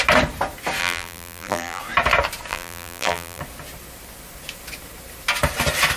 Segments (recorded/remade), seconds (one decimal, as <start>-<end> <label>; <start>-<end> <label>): 0.0-0.8 recorded; 0.8-1.8 remade; 1.8-2.5 recorded; 2.5-3.4 remade; 3.4-6.0 recorded